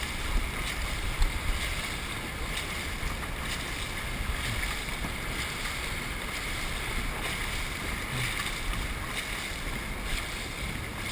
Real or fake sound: real